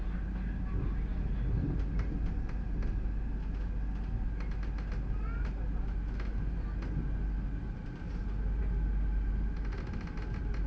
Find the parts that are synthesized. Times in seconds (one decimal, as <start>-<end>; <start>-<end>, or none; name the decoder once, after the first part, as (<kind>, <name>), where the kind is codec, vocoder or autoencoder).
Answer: none